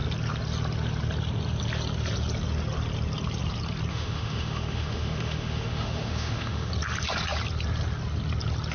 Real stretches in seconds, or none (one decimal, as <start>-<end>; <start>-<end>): 0.0-3.9; 6.7-8.7